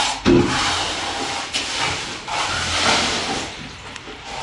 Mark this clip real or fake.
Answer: real